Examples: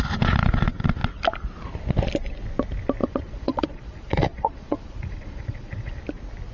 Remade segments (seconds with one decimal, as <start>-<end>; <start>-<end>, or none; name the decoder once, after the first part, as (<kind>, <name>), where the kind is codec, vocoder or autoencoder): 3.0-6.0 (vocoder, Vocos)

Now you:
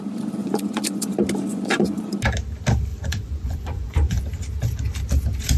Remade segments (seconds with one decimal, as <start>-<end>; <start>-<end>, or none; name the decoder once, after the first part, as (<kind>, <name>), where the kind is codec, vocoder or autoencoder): 0.4-1.1 (vocoder, Vocos); 1.5-2.1; 2.9-4.2

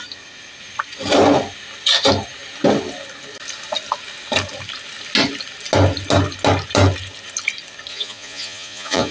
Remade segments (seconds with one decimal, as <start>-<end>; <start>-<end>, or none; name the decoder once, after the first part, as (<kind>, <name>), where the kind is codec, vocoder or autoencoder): 7.9-9.1 (vocoder, Vocos)

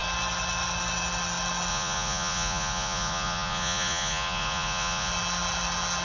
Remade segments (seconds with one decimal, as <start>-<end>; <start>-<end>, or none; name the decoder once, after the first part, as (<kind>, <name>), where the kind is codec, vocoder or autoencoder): 1.7-5.1 (vocoder, Vocos)

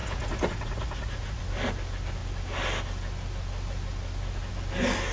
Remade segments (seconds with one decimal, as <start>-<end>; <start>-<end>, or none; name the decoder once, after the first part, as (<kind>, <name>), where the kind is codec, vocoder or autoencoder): 0.0-1.4 (vocoder, Vocos)

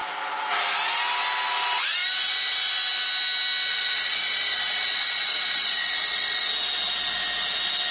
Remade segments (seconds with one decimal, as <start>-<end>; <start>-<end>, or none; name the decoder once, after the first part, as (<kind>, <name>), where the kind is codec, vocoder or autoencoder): 3.7-6.5 (vocoder, Vocos)